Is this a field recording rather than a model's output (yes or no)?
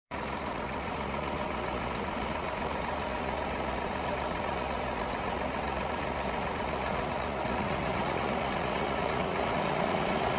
no